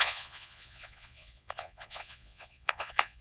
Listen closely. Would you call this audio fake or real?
fake